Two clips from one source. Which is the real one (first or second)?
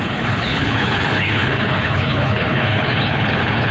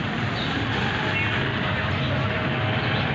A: second